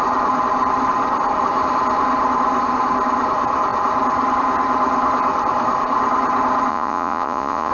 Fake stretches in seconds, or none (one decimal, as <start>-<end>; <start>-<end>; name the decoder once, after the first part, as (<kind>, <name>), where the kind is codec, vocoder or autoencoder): 6.7-7.7 (vocoder, Vocos)